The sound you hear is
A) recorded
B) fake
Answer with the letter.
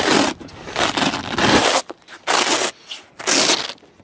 A